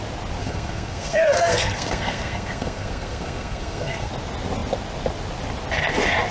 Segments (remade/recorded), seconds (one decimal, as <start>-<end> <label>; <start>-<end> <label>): 0.0-0.4 recorded; 0.4-4.1 remade; 4.1-6.3 recorded